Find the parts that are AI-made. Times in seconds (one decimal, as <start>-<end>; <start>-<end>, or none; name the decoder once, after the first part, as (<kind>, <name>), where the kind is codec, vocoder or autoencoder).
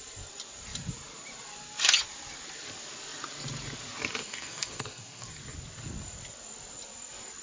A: 4.2-5.3 (codec, SNAC)